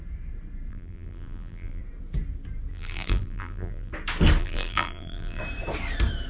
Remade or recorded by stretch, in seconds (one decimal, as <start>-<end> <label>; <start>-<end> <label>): 0.0-0.7 recorded; 0.7-1.8 remade; 1.8-2.7 recorded; 2.7-3.9 remade; 3.9-4.4 recorded; 4.4-5.4 remade; 5.4-6.3 recorded